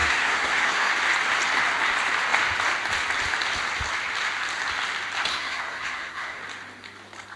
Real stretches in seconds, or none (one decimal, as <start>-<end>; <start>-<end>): 0.9-5.3; 6.4-7.4